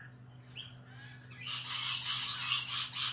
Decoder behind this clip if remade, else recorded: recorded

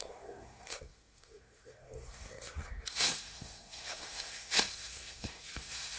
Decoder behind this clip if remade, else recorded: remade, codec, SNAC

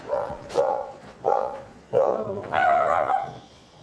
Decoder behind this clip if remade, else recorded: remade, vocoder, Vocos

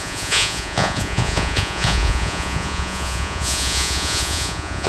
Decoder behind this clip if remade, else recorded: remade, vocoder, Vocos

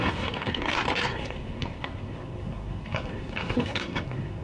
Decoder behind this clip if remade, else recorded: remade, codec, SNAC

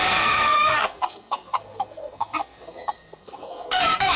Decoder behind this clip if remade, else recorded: remade, codec, SNAC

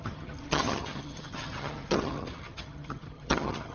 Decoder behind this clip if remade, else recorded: remade, vocoder, HiFi-GAN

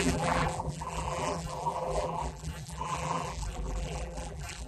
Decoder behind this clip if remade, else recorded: remade, vocoder, BigVGAN v2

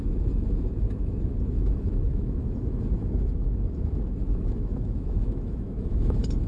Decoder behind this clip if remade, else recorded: remade, autoencoder, DAC-VAE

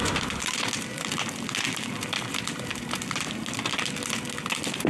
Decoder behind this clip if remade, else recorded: recorded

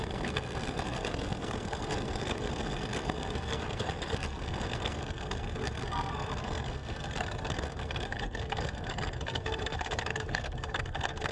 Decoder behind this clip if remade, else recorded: remade, codec, SNAC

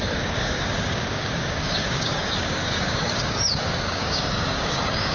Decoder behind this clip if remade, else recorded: remade, codec, DAC